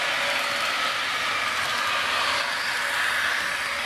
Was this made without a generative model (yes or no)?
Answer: yes